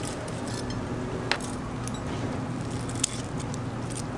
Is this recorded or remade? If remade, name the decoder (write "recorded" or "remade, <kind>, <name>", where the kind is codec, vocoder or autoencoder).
recorded